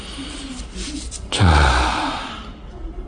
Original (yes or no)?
yes